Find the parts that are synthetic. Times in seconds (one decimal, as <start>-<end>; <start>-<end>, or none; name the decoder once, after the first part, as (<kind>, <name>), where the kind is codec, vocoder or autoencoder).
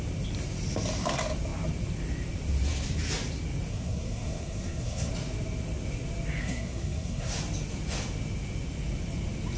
3.7-5.1 (codec, SNAC); 6.4-7.3